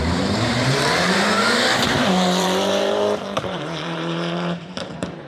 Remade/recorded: remade